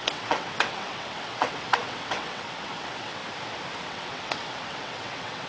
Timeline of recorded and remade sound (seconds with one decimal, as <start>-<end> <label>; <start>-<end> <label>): 0.0-3.2 remade; 3.2-3.8 recorded; 3.8-5.5 remade

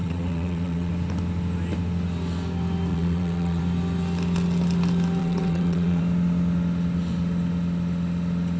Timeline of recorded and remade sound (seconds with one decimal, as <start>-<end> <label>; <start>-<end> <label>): 0.0-0.9 remade; 0.9-2.9 recorded; 2.9-3.6 remade; 3.6-5.2 recorded; 5.2-6.0 remade; 6.0-8.6 recorded

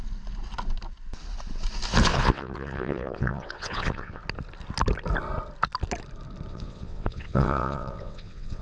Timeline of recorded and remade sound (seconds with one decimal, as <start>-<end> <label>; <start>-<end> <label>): 0.0-2.1 recorded; 2.1-4.2 remade; 4.2-6.5 recorded; 6.5-8.6 remade

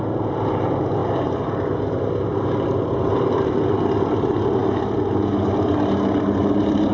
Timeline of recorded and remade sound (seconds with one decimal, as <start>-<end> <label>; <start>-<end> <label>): 0.0-6.9 recorded

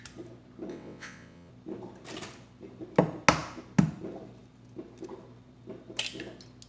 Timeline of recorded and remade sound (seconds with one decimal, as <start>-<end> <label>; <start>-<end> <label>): 0.0-0.7 recorded; 0.7-1.5 remade; 1.5-6.7 recorded

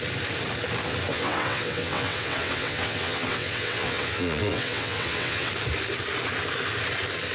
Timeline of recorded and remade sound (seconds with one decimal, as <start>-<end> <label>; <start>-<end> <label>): 0.0-1.1 recorded; 1.1-5.5 remade; 5.5-7.3 recorded